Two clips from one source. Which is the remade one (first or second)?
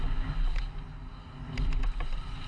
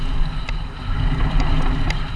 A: second